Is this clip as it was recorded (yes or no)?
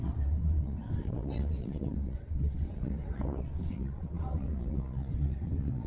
no